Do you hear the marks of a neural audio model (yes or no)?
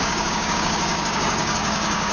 yes